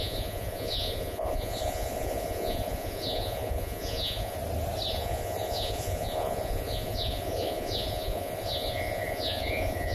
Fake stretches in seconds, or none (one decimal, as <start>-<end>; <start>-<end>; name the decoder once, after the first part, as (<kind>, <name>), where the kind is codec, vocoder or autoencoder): 0.0-4.4 (vocoder, Vocos); 4.9-9.9